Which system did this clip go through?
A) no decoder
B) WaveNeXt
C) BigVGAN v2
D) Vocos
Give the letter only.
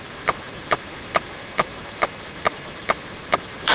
C